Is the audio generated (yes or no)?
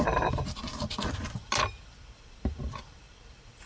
no